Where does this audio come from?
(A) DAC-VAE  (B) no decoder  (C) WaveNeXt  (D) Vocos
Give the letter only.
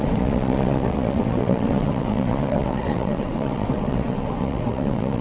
C